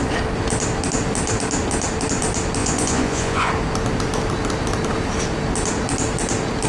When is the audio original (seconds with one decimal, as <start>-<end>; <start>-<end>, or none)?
0.0-2.6; 3.5-6.7